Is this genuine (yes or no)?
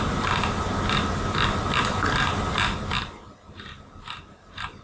yes